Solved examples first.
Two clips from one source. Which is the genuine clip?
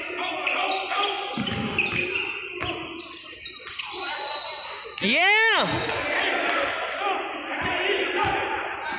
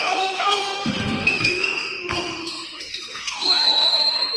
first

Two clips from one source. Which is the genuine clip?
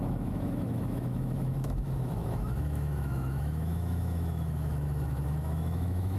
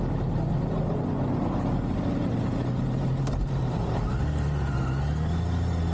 second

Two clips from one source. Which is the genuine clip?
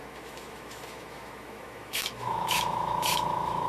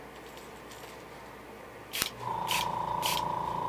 second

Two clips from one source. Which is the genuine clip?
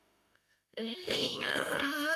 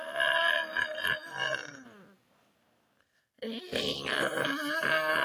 second